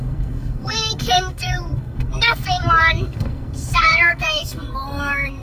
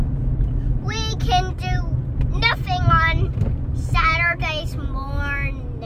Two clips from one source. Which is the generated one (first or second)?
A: first